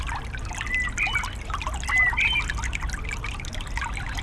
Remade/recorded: recorded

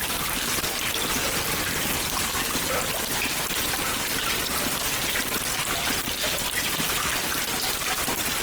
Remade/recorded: recorded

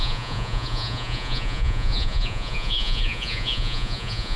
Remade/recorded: remade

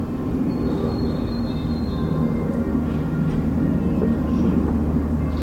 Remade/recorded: recorded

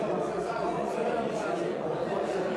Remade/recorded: remade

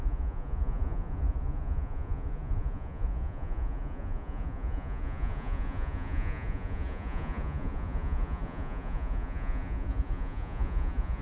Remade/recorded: remade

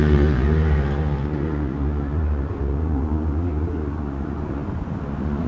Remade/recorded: remade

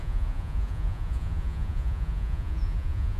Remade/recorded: remade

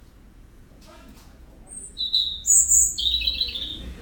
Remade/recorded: remade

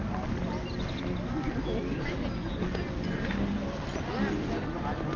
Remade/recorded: recorded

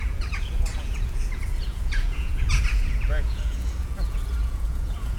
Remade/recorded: remade